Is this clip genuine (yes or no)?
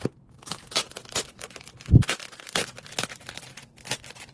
yes